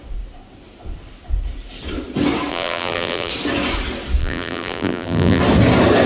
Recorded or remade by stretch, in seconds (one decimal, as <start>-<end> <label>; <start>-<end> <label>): 0.0-2.5 recorded; 2.5-3.3 remade; 3.3-4.2 recorded; 4.2-5.4 remade; 5.4-6.1 recorded